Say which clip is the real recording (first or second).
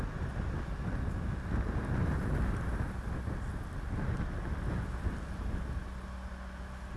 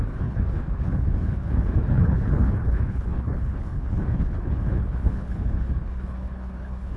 first